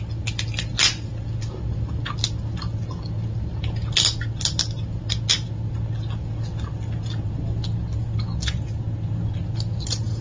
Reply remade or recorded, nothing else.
recorded